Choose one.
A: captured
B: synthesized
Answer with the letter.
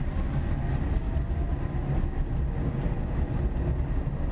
A